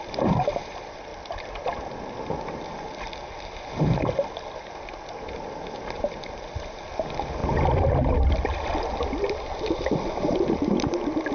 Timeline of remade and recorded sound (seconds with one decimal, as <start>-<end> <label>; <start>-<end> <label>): 0.0-1.1 remade; 1.1-5.1 recorded; 5.1-7.4 remade; 7.4-9.4 recorded; 9.4-11.3 remade